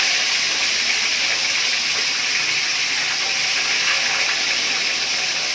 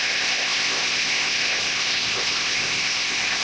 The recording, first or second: first